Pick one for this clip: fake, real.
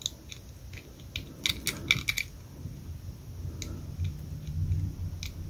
real